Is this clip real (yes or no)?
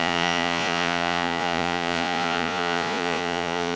no